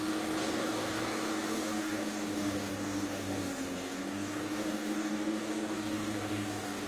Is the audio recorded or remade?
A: remade